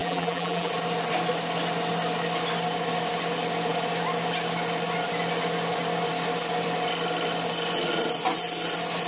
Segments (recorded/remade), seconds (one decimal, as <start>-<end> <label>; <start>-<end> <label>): 0.0-0.7 remade; 0.7-9.1 recorded